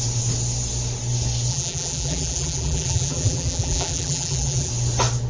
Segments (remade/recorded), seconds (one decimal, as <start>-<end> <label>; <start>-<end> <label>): 0.0-1.5 recorded; 1.5-4.7 remade; 4.7-5.3 recorded